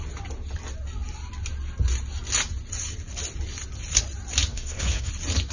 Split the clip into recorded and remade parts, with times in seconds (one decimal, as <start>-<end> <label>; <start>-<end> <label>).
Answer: 0.0-4.5 recorded; 4.5-5.1 remade; 5.1-5.5 recorded